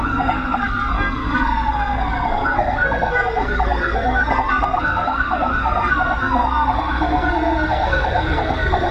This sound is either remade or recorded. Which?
remade